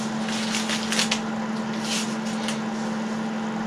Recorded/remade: recorded